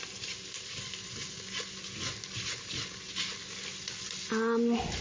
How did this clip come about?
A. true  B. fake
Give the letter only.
A